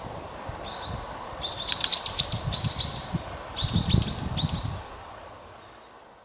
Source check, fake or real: real